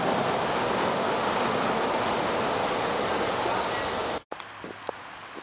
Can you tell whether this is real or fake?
real